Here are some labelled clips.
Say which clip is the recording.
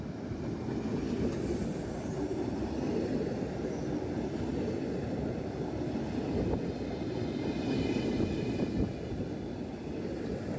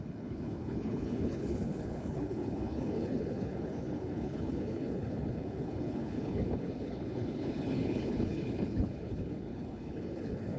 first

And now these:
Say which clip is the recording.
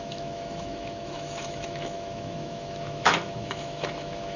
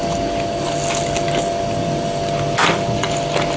second